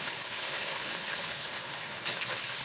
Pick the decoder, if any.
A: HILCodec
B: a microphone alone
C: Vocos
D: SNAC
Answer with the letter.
A